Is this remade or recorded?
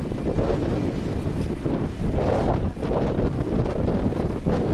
recorded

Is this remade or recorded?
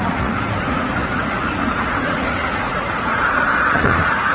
remade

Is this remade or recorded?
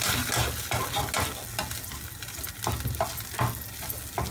recorded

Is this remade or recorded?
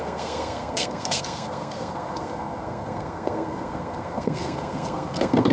remade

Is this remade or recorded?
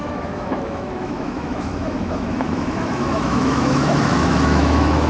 remade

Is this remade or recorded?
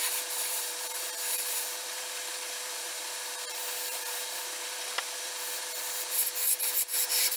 remade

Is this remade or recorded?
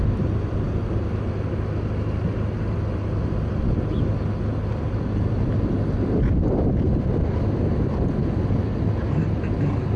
recorded